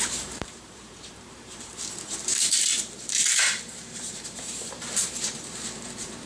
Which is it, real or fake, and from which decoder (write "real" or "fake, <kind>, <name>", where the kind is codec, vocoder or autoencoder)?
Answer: fake, vocoder, BigVGAN v2